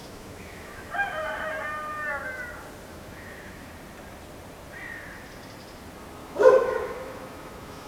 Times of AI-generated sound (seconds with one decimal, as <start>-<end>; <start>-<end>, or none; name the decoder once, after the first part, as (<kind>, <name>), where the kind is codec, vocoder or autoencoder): 0.0-0.9 (autoencoder, DAC-VAE); 2.9-3.7; 6.2-7.9